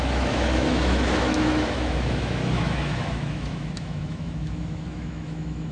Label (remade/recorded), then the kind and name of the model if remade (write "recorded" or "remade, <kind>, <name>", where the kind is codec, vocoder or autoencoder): remade, autoencoder, DAC-VAE